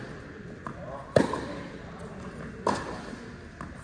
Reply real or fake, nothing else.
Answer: real